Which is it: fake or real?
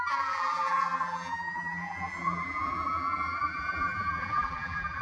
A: fake